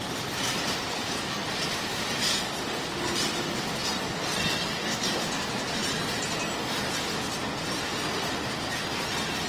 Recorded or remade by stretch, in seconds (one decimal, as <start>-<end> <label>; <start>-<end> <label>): 0.0-3.8 remade; 3.8-5.1 recorded; 5.1-5.8 remade; 5.8-9.5 recorded